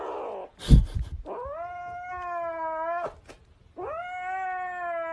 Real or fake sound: real